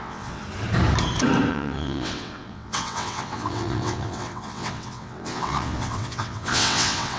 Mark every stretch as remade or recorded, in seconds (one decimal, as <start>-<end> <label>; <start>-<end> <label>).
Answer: 0.0-0.4 remade; 0.4-1.5 recorded; 1.5-7.2 remade